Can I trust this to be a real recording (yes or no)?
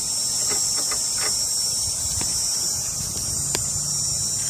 yes